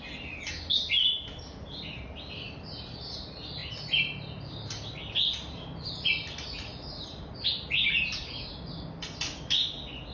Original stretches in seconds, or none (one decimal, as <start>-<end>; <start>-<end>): 0.0-10.1